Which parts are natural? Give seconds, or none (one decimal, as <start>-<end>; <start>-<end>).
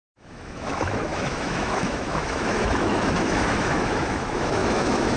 none